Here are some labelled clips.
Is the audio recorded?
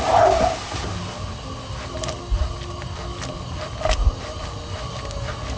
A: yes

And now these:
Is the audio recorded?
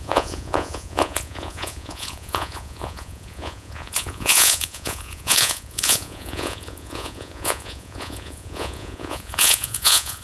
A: no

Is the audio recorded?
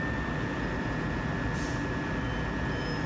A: yes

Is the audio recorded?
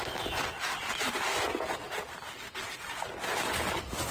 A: yes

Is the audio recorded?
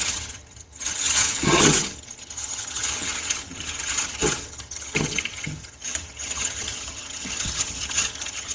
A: no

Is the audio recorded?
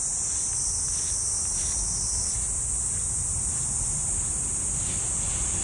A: yes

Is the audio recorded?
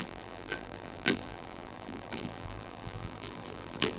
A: no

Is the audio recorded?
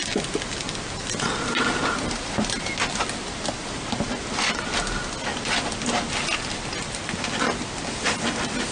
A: yes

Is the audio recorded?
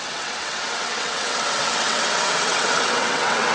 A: no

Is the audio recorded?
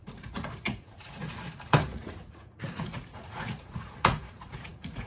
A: no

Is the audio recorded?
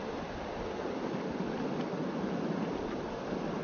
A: yes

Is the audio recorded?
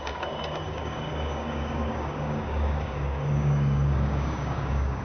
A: no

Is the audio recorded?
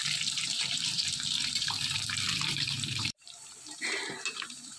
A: no